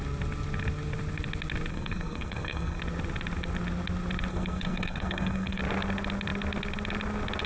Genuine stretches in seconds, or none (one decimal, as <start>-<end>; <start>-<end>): 0.0-1.7; 2.8-4.3; 5.6-7.5

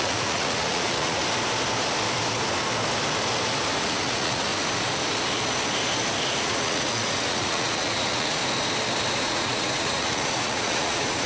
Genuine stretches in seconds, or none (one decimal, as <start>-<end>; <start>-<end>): 1.2-3.8; 4.5-6.4; 8.4-9.2